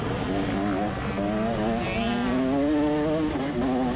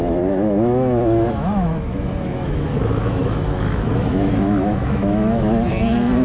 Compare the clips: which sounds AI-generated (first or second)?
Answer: second